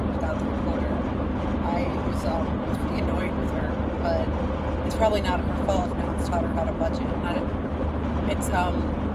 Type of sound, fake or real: real